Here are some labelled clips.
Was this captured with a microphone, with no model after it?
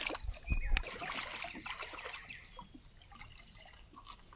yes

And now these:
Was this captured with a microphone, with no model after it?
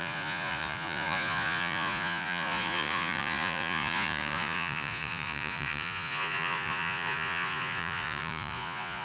no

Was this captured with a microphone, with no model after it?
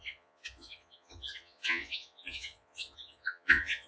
no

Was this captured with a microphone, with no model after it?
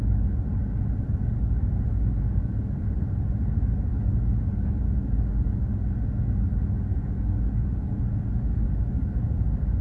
yes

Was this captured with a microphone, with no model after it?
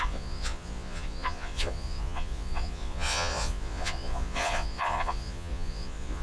no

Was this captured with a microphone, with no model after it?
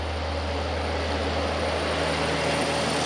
yes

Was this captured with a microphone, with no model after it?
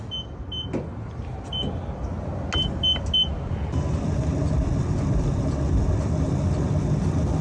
yes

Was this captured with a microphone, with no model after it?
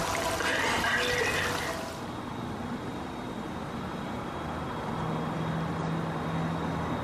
yes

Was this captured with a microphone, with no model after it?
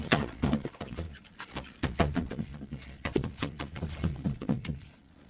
no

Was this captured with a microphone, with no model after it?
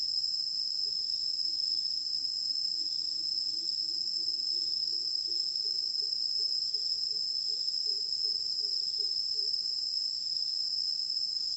no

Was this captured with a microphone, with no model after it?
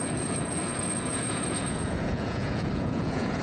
no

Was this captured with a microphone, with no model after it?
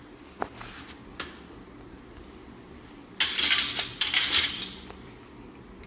yes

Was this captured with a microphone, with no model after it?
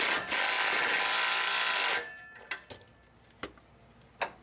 yes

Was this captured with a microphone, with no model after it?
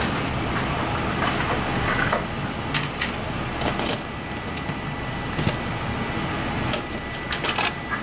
yes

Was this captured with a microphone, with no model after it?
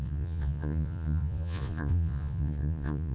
no